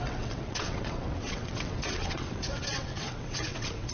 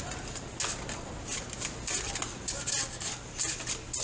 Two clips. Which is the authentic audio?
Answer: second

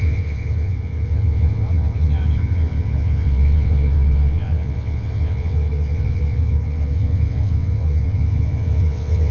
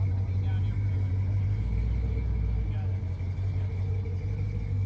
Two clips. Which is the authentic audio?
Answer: second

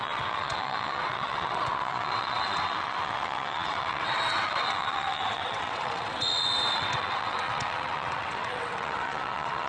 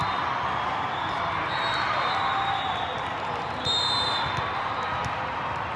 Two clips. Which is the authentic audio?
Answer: second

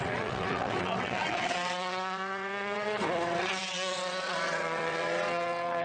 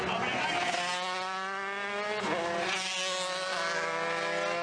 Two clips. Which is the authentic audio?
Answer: second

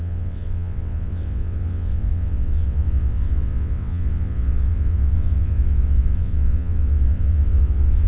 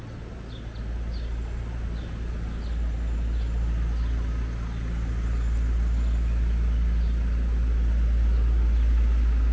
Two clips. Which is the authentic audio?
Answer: second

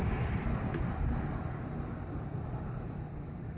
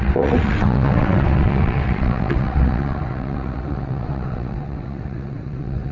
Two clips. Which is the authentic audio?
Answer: first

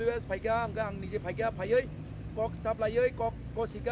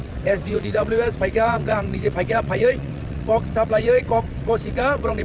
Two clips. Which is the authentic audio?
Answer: first